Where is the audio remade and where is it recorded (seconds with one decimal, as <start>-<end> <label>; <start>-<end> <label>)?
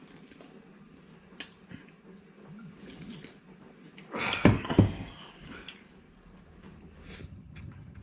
0.0-7.2 recorded; 7.2-8.0 remade